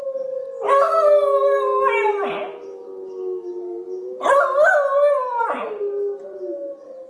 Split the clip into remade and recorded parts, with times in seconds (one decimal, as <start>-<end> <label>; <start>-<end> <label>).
0.0-7.1 recorded